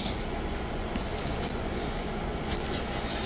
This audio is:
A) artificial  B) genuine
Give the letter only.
A